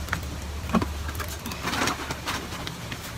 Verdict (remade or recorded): recorded